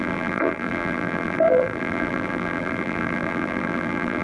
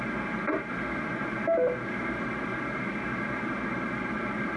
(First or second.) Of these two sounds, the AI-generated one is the first